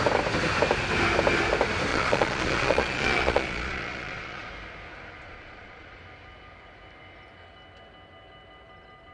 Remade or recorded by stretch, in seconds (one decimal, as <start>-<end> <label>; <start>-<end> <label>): 0.0-1.9 recorded; 1.9-4.5 remade; 4.5-5.2 recorded; 5.2-6.0 remade; 6.0-9.1 recorded